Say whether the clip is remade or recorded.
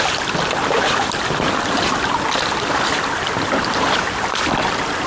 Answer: recorded